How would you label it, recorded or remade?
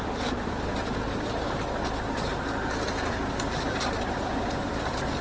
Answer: recorded